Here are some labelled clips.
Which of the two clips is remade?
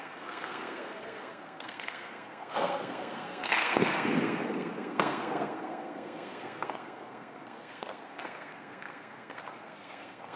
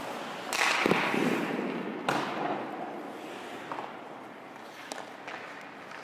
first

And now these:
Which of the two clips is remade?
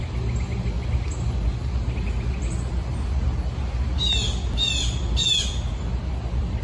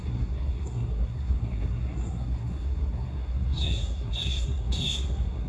second